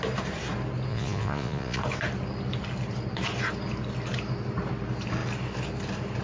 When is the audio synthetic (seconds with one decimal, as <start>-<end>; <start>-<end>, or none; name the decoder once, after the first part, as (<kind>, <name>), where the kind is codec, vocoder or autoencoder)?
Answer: 0.9-1.8 (vocoder, Vocos)